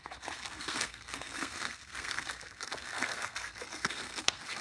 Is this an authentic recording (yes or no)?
no